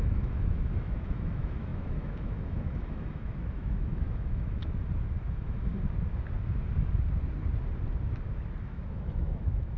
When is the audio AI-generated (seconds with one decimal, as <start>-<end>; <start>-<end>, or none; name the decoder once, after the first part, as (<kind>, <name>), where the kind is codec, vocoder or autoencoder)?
0.0-4.6 (autoencoder, DAC-VAE); 5.2-5.7; 8.6-9.8